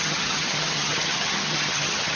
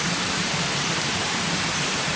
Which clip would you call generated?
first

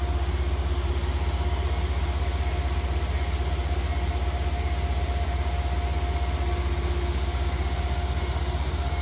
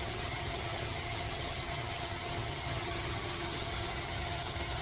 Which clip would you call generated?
second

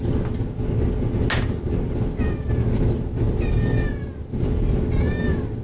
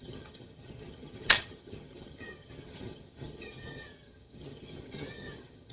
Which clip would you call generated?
second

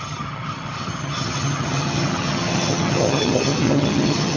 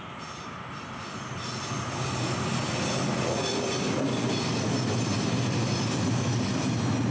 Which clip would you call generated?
first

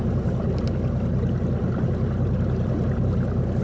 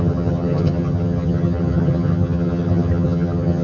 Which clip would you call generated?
second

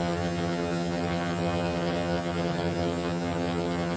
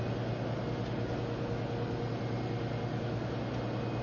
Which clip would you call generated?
first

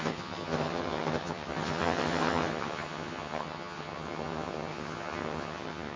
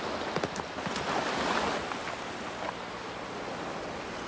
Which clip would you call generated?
first